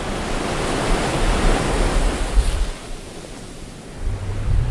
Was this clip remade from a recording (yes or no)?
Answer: no